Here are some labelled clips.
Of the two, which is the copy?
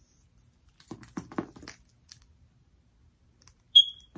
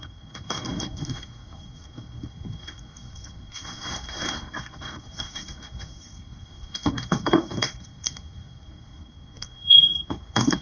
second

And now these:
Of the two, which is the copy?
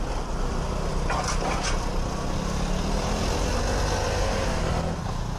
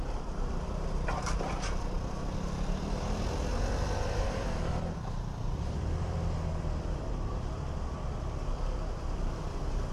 second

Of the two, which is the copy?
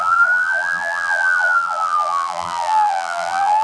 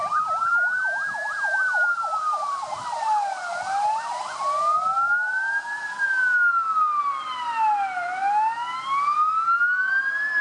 first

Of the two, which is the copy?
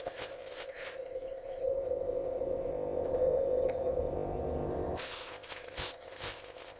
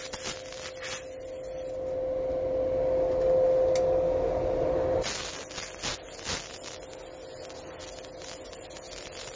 first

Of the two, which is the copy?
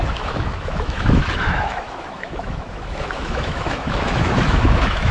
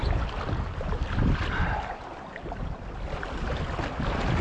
first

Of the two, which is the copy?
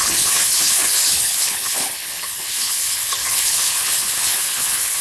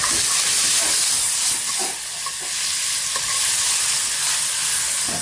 first